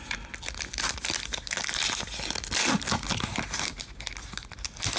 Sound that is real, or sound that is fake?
real